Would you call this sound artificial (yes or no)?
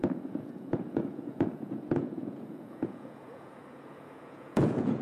yes